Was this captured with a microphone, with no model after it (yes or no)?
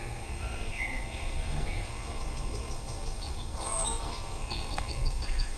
no